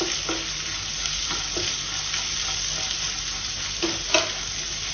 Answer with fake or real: real